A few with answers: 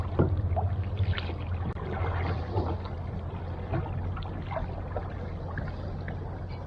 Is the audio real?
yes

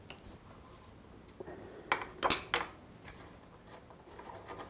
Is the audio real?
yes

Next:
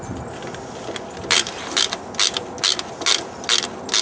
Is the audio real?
yes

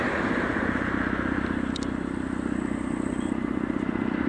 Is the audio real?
no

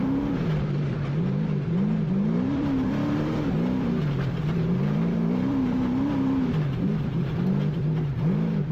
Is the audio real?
no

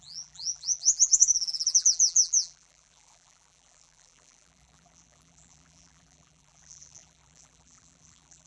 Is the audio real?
no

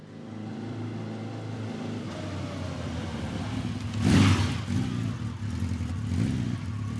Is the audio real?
yes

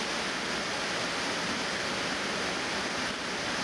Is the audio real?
yes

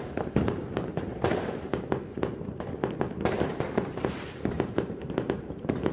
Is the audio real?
no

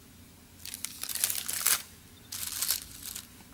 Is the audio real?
yes